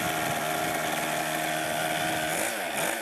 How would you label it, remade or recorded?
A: recorded